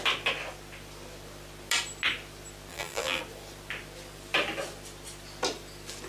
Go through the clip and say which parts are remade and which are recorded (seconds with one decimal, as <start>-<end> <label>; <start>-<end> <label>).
0.0-2.7 recorded; 2.7-3.2 remade; 3.2-6.1 recorded

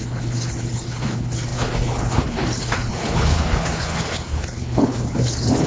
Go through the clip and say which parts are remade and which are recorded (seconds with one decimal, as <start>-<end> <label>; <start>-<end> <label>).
0.0-5.7 remade

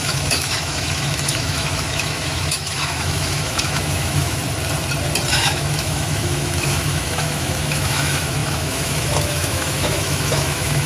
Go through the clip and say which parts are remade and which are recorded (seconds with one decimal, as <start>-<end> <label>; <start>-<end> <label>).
0.0-4.4 remade; 4.4-5.3 recorded; 5.3-10.9 remade

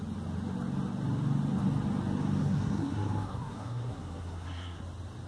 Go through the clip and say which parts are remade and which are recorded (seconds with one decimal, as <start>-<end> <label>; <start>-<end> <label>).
0.0-2.4 recorded; 2.4-4.8 remade; 4.8-5.3 recorded

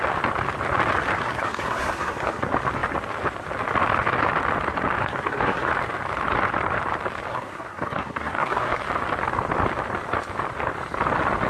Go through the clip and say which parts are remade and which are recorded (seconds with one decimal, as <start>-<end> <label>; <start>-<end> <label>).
0.0-1.1 recorded; 1.1-2.4 remade; 2.4-5.0 recorded; 5.0-5.7 remade; 5.7-7.3 recorded; 7.3-8.8 remade; 8.8-11.5 recorded